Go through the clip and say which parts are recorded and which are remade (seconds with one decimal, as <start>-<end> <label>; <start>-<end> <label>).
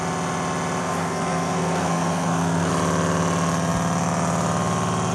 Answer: 0.0-0.8 recorded; 0.8-2.7 remade; 2.7-5.1 recorded